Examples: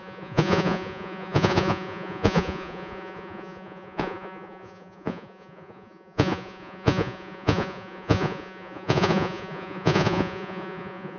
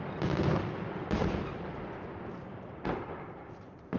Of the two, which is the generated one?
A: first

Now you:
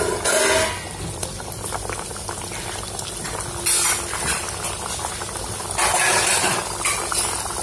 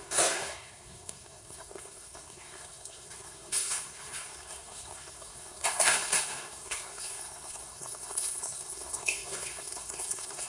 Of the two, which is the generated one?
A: second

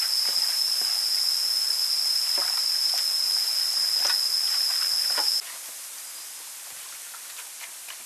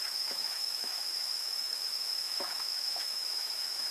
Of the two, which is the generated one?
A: second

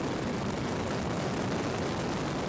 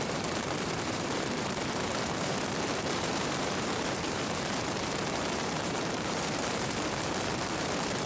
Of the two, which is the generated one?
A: second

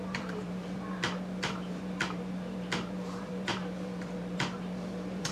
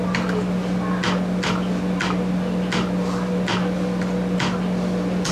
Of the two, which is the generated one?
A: first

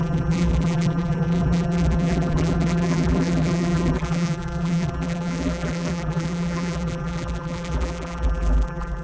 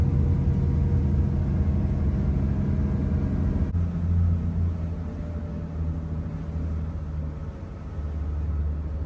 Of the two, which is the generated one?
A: first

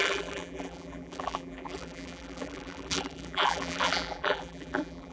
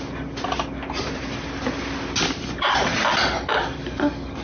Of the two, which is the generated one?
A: first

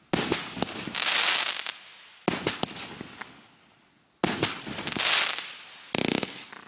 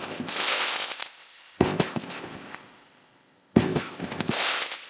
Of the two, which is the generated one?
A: second